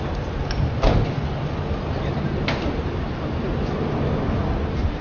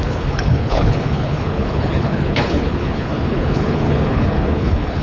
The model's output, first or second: second